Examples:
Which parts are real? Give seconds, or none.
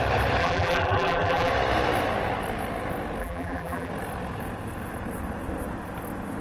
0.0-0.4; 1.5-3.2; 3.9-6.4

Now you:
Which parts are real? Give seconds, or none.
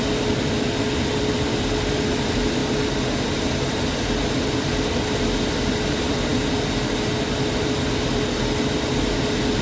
0.0-9.6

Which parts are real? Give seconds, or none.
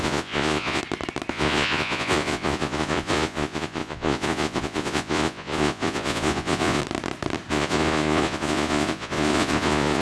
0.8-1.3; 6.8-7.5